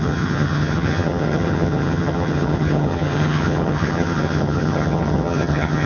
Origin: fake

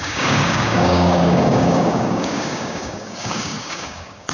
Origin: fake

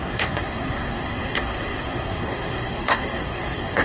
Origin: fake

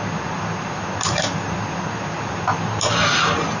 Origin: real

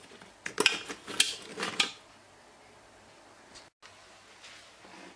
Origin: real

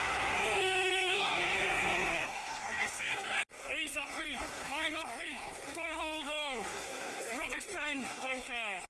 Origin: fake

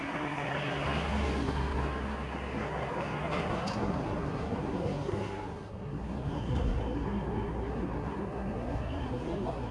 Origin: fake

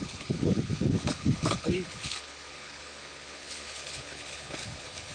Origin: fake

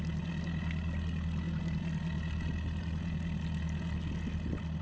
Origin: real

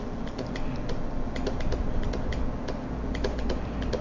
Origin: real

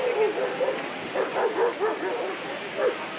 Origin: real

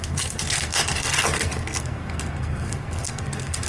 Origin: fake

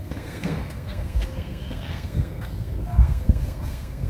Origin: fake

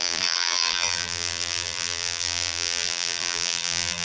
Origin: fake